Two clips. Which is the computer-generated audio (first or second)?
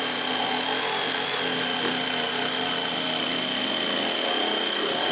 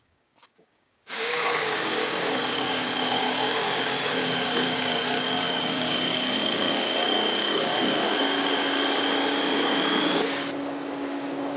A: second